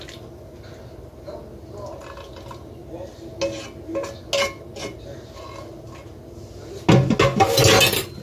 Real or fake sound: real